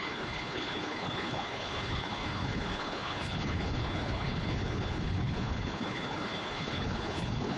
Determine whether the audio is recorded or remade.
remade